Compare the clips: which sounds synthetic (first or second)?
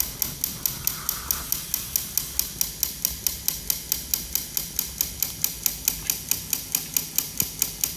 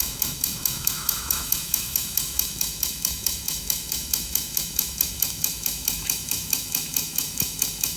second